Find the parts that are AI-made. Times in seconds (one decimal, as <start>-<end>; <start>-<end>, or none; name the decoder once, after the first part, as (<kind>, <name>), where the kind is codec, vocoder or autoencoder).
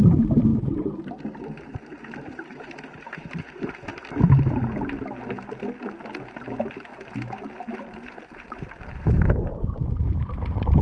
0.0-3.9 (vocoder, BigVGAN v2); 6.4-6.9; 7.8-10.8